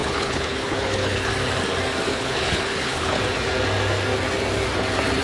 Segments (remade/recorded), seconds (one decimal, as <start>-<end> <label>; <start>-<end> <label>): 0.0-1.3 remade; 1.3-2.1 recorded; 2.1-3.2 remade; 3.2-5.2 recorded